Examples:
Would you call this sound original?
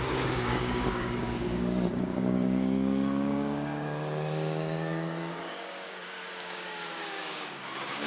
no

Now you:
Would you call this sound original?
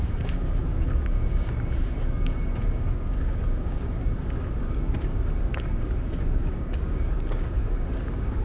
no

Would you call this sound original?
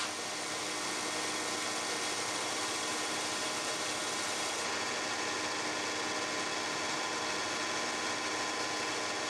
yes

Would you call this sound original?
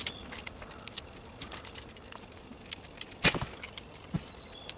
yes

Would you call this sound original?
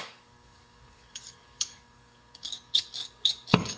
no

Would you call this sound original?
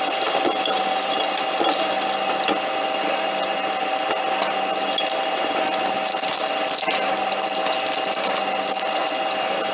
yes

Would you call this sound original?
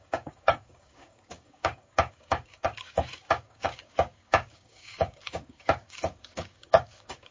no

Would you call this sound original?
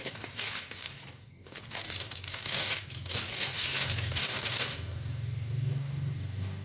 no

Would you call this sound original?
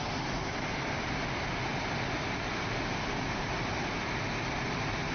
yes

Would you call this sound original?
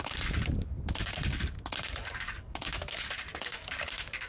no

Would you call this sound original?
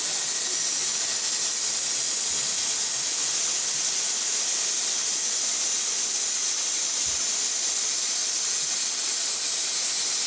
yes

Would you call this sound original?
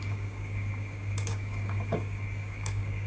no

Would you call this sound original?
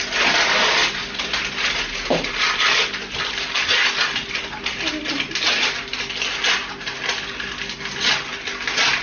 yes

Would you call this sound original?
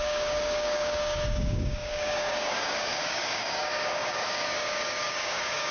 no